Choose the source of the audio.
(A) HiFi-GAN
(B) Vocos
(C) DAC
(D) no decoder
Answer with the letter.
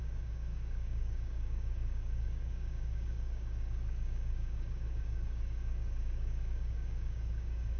C